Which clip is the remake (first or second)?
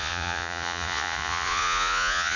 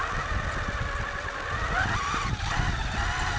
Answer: first